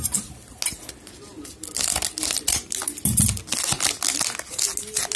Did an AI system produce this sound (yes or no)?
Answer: no